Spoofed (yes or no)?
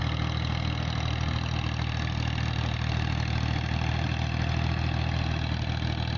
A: no